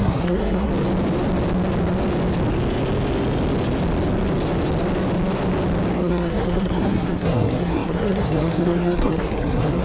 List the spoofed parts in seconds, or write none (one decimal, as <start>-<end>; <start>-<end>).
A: 0.0-0.7; 5.9-9.8

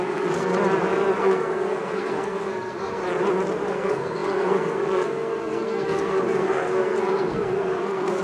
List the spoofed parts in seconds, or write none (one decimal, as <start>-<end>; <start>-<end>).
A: 0.0-0.5; 1.2-3.0; 3.7-8.2